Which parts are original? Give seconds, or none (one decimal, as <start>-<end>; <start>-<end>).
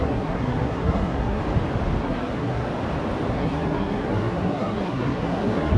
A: 1.4-2.0; 2.7-3.3